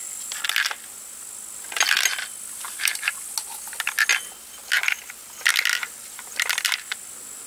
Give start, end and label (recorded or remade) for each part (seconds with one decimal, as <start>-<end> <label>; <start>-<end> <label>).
0.0-7.5 recorded